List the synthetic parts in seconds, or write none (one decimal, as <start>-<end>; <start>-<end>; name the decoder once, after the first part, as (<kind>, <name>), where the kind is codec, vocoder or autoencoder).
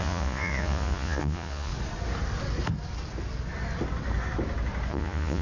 0.0-1.7 (vocoder, Vocos); 4.9-5.4